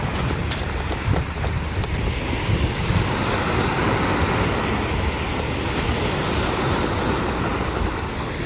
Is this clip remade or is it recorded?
recorded